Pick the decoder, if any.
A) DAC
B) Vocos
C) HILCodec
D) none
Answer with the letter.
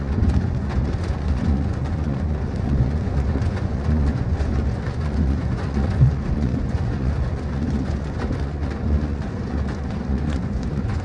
B